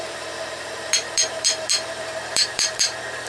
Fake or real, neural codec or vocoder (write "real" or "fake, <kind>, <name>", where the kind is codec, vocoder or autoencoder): fake, vocoder, BigVGAN v2